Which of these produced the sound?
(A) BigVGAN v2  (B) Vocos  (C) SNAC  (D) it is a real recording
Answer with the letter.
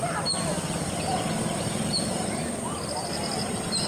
D